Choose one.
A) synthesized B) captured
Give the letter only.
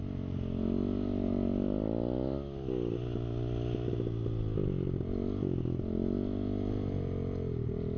B